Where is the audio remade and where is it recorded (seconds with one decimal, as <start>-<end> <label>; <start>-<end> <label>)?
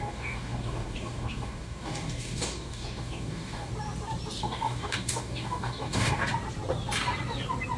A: 0.0-3.7 remade; 3.7-4.4 recorded; 4.4-6.2 remade; 6.2-7.8 recorded